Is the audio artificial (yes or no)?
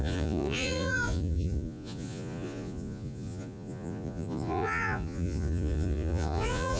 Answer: yes